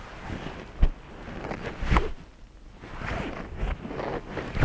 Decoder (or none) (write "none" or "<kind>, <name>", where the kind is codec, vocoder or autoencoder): none